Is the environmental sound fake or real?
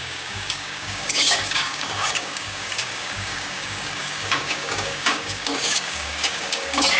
fake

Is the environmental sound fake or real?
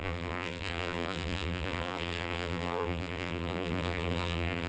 fake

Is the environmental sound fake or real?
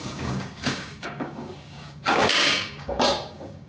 fake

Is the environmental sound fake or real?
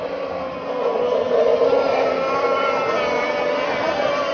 real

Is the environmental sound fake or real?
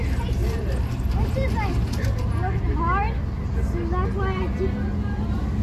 real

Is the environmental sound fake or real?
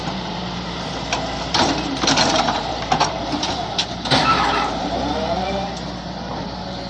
fake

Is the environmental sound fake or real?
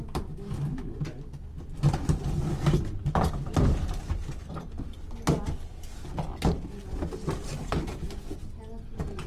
real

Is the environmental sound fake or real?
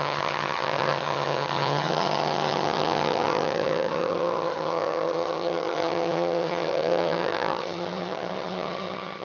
fake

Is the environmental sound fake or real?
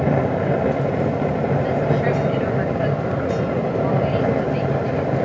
real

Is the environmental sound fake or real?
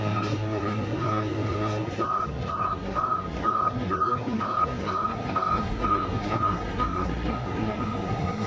fake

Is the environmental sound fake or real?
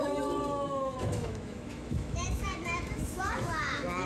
fake